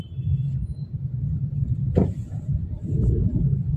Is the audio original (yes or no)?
no